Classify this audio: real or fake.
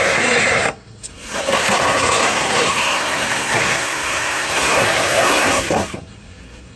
fake